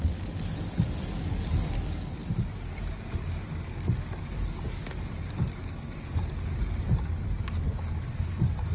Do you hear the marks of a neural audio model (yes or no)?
yes